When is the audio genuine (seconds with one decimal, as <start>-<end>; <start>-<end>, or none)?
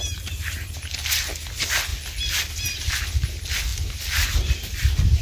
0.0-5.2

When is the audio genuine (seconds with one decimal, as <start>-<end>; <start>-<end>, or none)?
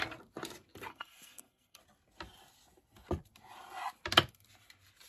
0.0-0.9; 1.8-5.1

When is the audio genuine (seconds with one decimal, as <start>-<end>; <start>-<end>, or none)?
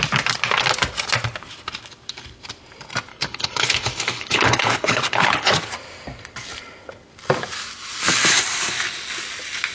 0.0-3.1; 5.5-9.7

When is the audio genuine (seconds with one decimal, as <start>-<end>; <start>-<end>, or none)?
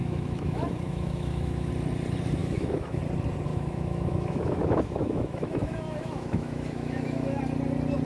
1.7-2.4; 3.0-3.5; 7.4-8.1